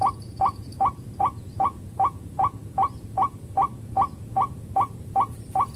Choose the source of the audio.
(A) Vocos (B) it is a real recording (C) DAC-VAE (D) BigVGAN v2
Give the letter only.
A